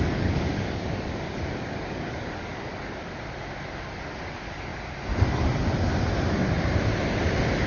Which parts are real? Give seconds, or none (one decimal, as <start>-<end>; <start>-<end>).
2.7-7.7